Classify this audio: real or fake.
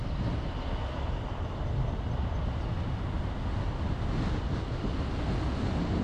real